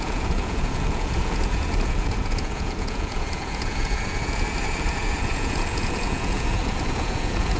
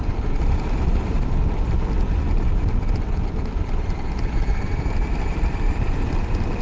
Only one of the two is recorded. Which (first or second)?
second